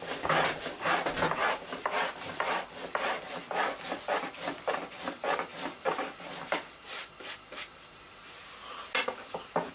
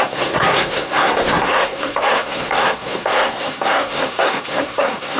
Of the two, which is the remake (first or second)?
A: second